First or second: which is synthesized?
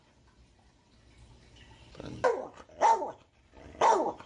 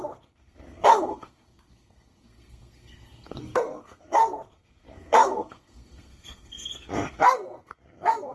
second